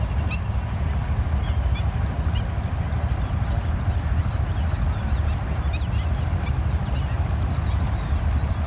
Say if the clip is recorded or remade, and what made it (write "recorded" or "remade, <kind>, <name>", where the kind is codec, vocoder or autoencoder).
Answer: recorded